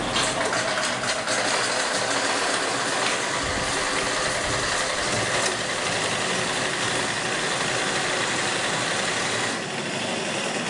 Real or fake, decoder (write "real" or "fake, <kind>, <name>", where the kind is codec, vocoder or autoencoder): real